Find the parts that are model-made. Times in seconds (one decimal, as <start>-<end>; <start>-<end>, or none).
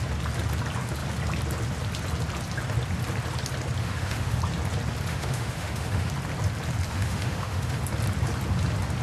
3.8-4.4; 5.1-6.1; 6.9-7.8